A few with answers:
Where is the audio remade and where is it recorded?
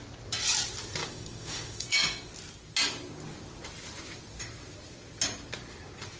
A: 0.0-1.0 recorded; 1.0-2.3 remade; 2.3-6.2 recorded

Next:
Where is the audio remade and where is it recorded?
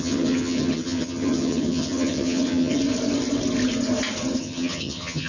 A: 0.0-2.8 remade; 2.8-4.4 recorded; 4.4-5.3 remade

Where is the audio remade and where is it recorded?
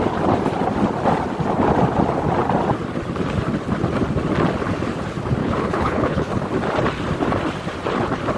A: 0.0-5.4 recorded; 5.4-6.3 remade; 6.3-8.4 recorded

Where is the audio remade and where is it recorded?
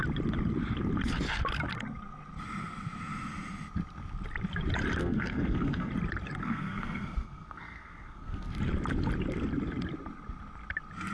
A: 0.0-5.0 recorded; 5.0-5.9 remade; 5.9-6.4 recorded; 6.4-8.5 remade; 8.5-11.1 recorded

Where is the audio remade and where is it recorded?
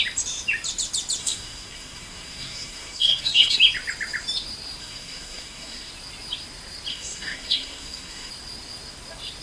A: 0.0-1.2 recorded; 1.2-3.6 remade; 3.6-4.8 recorded; 4.8-5.9 remade; 5.9-6.9 recorded; 6.9-8.3 remade; 8.3-9.4 recorded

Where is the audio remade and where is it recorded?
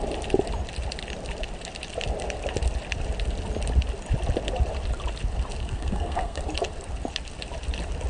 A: 0.0-5.6 recorded; 5.6-6.4 remade; 6.4-8.1 recorded